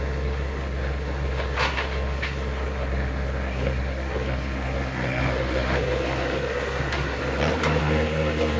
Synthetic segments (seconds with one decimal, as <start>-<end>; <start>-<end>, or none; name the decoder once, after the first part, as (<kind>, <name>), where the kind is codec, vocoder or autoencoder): 0.0-7.2 (codec, SNAC); 7.8-8.6